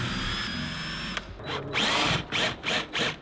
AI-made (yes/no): no